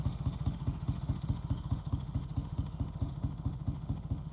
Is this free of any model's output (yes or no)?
no